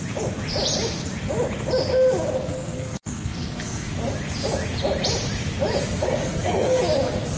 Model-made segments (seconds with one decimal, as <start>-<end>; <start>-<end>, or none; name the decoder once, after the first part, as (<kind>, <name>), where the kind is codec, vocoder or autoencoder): 2.5-3.9 (codec, SNAC); 6.0-6.8